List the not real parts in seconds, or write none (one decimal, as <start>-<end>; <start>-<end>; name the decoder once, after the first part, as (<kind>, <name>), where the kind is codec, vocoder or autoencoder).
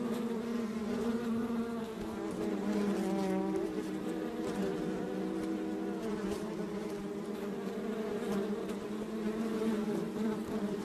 9.8-10.8 (vocoder, BigVGAN v2)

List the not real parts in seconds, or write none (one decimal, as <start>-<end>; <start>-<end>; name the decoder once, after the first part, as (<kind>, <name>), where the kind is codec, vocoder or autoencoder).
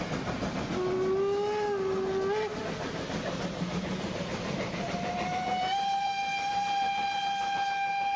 2.5-7.2 (vocoder, BigVGAN v2)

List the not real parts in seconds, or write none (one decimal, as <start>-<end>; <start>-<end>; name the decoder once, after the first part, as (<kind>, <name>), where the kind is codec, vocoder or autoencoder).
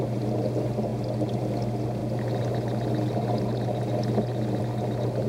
none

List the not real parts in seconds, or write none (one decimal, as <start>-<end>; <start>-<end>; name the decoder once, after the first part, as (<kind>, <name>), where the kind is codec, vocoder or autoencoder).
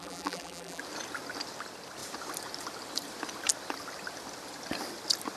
0.0-0.8 (vocoder, BigVGAN v2)